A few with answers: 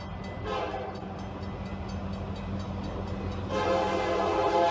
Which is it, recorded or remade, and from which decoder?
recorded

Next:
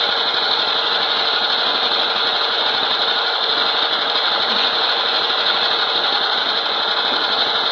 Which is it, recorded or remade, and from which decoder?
remade, vocoder, Vocos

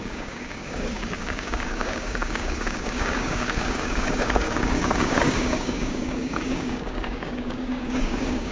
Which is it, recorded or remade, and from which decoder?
remade, codec, DAC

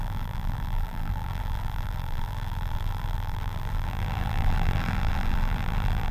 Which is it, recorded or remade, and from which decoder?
remade, vocoder, BigVGAN v2